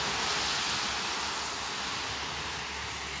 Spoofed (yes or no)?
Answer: no